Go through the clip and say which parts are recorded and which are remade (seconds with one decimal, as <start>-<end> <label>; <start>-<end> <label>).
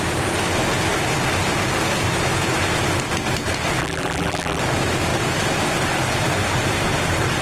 0.0-3.8 recorded; 3.8-4.6 remade; 4.6-7.4 recorded